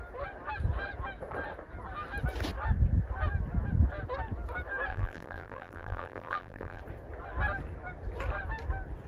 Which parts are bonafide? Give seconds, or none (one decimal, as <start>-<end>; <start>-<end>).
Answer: 0.0-4.9; 6.8-9.1